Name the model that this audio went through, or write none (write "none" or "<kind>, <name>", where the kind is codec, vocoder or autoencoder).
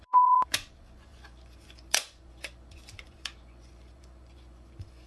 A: vocoder, Vocos